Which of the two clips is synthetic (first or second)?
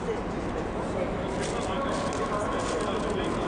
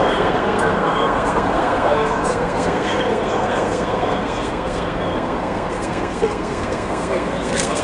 second